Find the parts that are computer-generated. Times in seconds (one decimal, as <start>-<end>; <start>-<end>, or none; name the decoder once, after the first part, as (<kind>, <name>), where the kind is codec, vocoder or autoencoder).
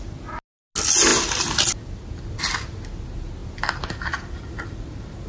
none